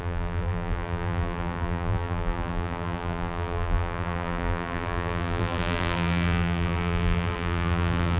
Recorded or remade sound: remade